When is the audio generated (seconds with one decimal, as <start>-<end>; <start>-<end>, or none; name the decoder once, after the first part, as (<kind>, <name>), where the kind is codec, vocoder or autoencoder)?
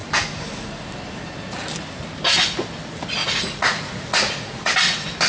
3.2-4.7 (vocoder, Vocos)